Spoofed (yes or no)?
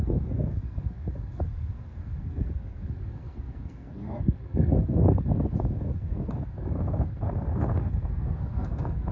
yes